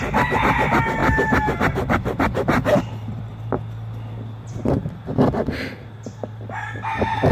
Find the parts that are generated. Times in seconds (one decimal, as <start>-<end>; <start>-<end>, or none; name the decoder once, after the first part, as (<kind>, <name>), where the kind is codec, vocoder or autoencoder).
1.0-2.9 (vocoder, BigVGAN v2)